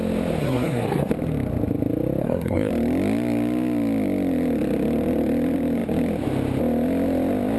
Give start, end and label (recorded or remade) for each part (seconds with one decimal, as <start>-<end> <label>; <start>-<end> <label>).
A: 0.0-0.4 recorded; 0.4-1.1 remade; 1.1-2.2 recorded; 2.2-2.7 remade; 2.7-7.6 recorded